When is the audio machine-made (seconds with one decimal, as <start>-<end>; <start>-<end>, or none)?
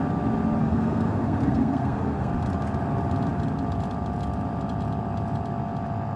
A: 0.6-2.3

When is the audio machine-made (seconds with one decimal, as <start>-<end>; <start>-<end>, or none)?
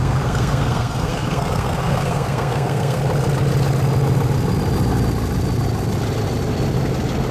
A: 0.0-3.0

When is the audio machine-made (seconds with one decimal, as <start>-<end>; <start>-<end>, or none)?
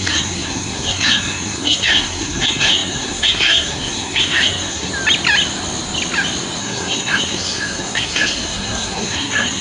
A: 0.0-4.9; 6.6-9.6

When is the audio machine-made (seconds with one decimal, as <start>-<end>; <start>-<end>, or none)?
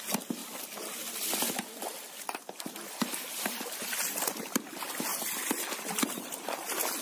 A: none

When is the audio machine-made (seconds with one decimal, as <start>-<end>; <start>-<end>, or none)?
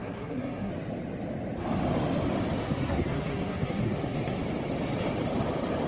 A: 0.0-0.7; 2.6-4.4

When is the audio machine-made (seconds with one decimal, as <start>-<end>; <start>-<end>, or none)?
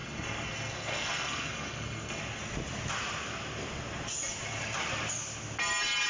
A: 0.0-2.2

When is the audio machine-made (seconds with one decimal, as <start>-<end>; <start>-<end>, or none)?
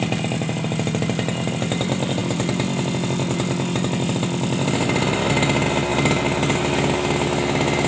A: none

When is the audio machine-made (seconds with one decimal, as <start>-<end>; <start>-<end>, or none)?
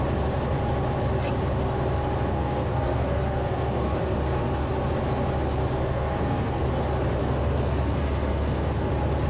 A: 2.3-4.7; 5.6-6.7; 7.2-8.9